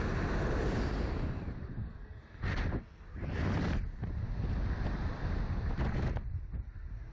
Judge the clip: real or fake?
real